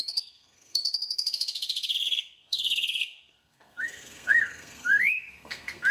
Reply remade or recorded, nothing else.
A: remade